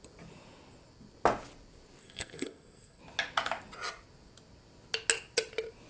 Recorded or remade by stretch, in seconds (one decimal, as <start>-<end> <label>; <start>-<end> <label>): 0.0-2.0 recorded; 2.0-3.0 remade; 3.0-5.9 recorded